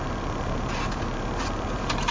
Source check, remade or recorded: remade